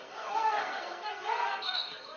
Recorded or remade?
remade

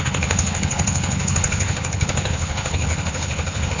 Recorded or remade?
remade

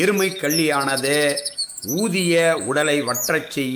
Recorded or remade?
remade